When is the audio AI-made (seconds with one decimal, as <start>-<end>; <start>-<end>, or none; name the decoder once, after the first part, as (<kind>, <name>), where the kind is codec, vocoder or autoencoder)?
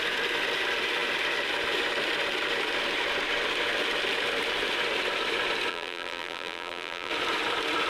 5.7-7.1 (vocoder, BigVGAN v2)